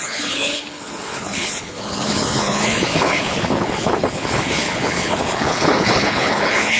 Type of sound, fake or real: fake